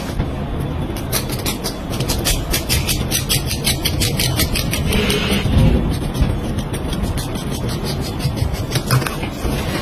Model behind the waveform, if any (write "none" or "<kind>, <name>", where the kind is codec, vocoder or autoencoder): none